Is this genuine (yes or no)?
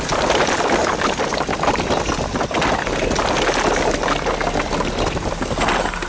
yes